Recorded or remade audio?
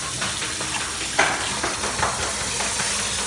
recorded